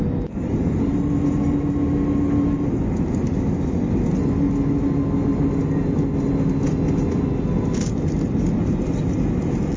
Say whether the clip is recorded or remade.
recorded